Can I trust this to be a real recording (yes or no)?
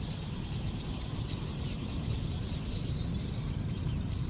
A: no